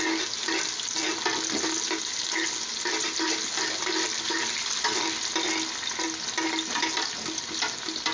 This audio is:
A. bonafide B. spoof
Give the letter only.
A